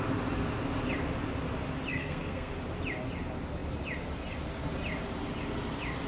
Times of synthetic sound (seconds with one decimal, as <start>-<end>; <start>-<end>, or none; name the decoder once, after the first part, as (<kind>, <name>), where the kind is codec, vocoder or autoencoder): 1.9-2.5 (codec, SNAC)